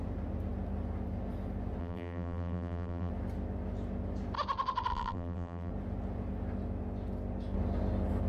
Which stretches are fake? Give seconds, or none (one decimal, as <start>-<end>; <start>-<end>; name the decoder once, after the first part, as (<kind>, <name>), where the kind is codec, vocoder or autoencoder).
1.8-3.1 (vocoder, BigVGAN v2); 4.9-5.7